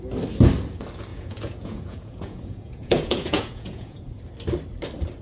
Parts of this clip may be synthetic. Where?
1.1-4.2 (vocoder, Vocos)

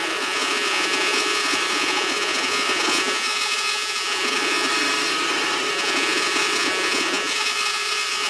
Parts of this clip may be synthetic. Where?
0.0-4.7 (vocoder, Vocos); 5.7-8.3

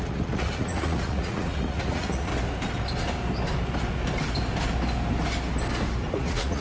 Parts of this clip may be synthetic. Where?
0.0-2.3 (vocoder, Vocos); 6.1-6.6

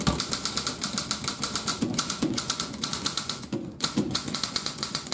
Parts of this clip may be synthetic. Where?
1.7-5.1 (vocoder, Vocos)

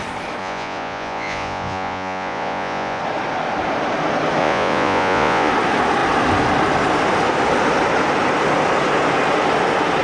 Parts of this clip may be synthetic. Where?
0.4-3.0 (vocoder, Vocos); 4.4-5.5

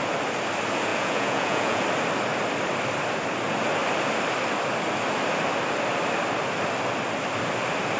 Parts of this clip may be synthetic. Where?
0.9-1.8 (vocoder, Vocos)

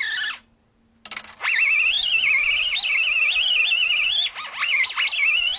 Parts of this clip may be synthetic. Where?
none

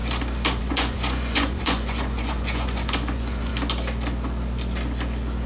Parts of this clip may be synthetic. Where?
0.6-3.5 (vocoder, Vocos)